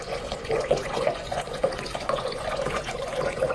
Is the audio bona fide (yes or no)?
no